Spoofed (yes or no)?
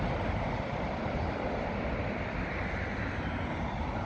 no